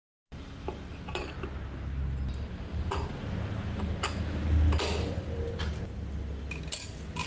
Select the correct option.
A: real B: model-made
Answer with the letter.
A